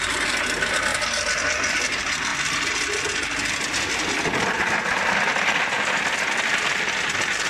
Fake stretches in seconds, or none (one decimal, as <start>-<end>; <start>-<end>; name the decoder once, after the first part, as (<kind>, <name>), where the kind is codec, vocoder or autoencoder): none